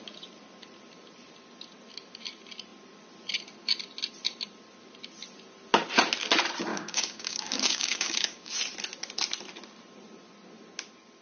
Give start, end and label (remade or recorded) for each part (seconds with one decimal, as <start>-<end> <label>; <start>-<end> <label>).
0.0-6.7 recorded; 6.7-8.5 remade; 8.5-11.2 recorded